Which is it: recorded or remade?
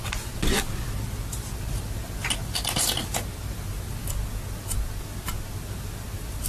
recorded